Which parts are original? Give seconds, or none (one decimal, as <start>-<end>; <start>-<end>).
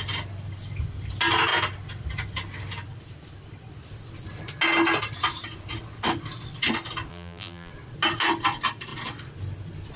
0.0-7.1; 7.7-10.0